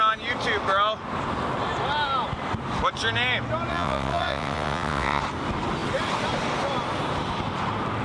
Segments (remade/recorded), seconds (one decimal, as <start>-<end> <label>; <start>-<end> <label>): 0.0-3.7 recorded; 3.7-5.2 remade; 5.2-8.0 recorded